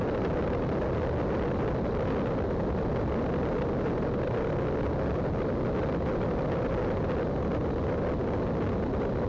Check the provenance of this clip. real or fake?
real